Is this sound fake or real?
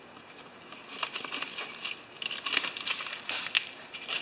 real